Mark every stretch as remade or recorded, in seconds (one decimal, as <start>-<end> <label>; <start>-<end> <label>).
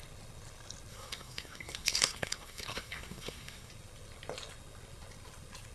0.0-0.9 recorded; 0.9-3.7 remade; 3.7-5.7 recorded